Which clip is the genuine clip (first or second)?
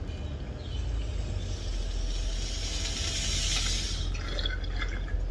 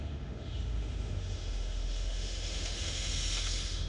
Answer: first